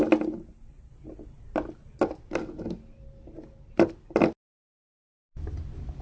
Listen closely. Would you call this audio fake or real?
real